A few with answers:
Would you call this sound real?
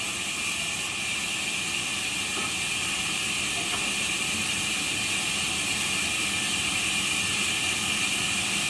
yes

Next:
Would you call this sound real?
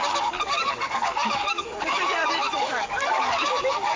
no